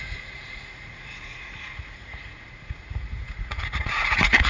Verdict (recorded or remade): remade